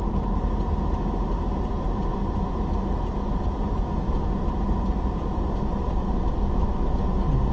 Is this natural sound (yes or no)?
yes